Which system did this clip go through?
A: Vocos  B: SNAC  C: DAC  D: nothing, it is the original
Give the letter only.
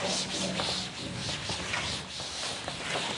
D